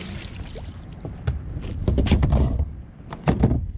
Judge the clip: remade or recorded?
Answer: recorded